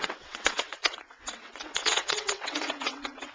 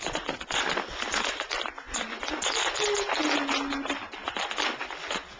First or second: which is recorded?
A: second